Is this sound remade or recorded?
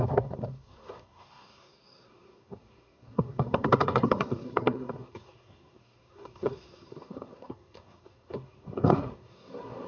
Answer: remade